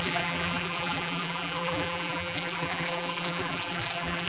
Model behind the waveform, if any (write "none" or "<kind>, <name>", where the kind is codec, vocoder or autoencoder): vocoder, BigVGAN v2